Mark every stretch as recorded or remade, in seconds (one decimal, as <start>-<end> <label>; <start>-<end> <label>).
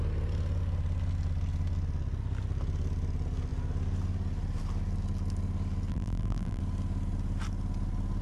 0.0-5.9 recorded; 5.9-6.6 remade; 6.6-8.2 recorded